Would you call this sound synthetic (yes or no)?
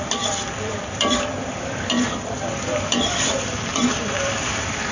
yes